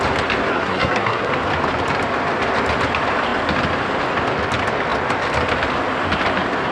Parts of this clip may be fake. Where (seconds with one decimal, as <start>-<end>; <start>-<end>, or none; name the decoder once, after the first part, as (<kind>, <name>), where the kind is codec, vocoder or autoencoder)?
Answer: 0.5-1.3 (codec, SNAC)